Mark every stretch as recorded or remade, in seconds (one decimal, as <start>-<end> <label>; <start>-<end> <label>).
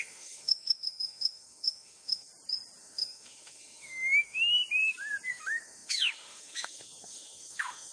0.0-2.3 remade; 2.3-2.8 recorded; 2.8-4.6 remade; 4.6-5.3 recorded; 5.3-7.9 remade